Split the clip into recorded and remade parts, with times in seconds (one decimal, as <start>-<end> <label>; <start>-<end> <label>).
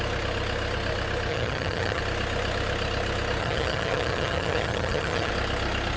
0.0-1.3 recorded; 1.3-2.0 remade; 2.0-3.4 recorded; 3.4-5.3 remade; 5.3-6.0 recorded